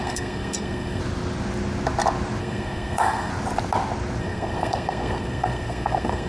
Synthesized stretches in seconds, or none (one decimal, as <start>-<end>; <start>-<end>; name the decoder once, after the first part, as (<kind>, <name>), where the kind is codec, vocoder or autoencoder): 0.0-1.0 (codec, SNAC); 2.4-3.3; 4.2-6.3